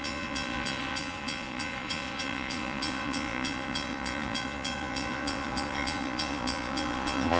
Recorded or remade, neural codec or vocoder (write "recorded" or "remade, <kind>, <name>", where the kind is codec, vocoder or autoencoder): remade, vocoder, Vocos